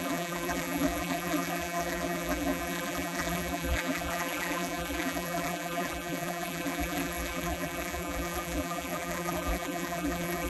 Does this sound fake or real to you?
fake